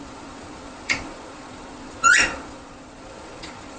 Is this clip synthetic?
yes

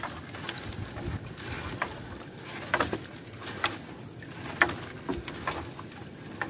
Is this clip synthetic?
no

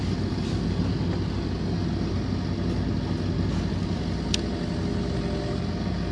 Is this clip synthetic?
no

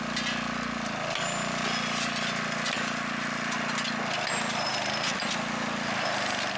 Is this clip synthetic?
no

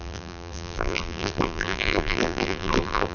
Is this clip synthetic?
yes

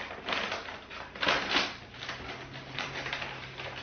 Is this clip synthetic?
no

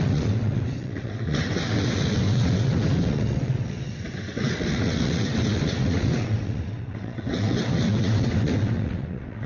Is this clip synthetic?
yes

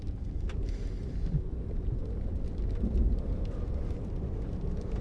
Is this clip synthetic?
no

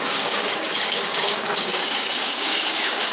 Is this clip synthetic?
yes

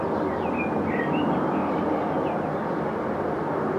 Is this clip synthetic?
no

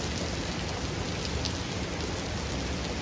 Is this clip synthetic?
no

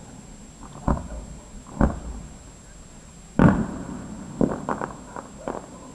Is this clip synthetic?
no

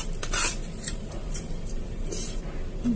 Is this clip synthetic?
yes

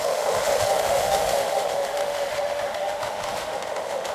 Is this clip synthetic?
yes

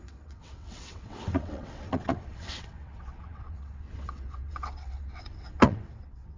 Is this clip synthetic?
yes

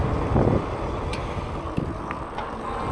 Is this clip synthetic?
no